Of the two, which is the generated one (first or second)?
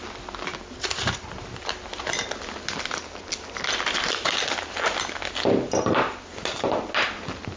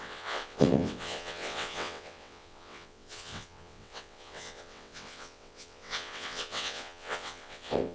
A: second